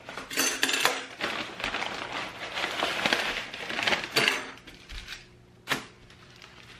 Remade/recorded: recorded